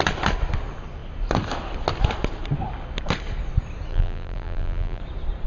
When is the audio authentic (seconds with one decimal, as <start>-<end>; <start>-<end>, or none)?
0.0-3.9; 5.0-5.5